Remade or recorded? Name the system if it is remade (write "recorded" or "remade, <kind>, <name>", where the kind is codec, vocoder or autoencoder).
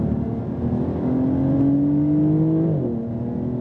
recorded